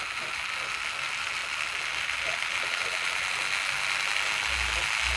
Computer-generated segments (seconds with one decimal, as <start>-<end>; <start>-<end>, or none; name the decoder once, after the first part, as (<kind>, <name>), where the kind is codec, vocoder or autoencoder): none